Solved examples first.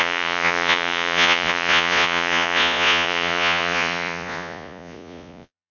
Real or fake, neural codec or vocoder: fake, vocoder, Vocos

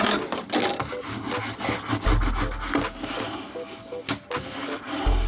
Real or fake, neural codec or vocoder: real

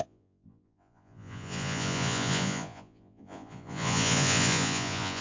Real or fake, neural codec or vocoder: fake, vocoder, Vocos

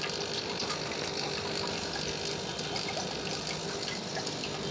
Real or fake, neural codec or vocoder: real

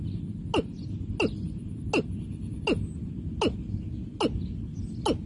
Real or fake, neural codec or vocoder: real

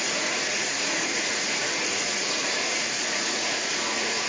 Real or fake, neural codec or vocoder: fake, vocoder, Vocos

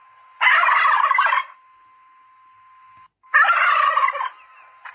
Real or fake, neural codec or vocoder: real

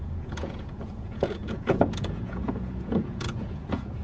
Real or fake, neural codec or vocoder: fake, vocoder, Vocos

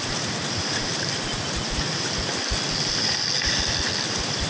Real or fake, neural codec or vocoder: real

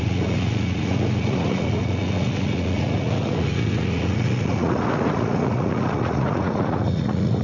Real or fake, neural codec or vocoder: fake, vocoder, Vocos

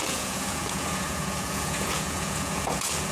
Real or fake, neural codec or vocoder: fake, vocoder, Vocos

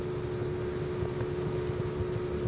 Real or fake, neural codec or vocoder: real